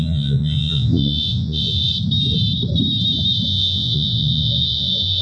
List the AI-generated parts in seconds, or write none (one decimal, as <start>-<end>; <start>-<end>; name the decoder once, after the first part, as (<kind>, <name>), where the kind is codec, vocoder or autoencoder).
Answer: 0.0-1.8 (vocoder, Vocos); 3.5-5.2